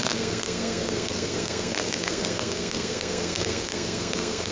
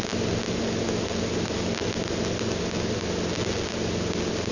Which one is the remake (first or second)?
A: first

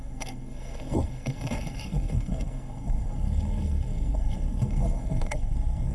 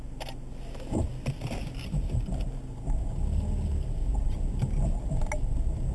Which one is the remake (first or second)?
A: first